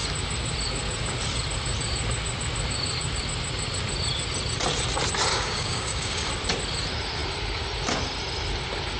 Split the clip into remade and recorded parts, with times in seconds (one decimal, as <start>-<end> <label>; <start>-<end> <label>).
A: 0.0-5.3 recorded; 5.3-6.3 remade; 6.3-9.0 recorded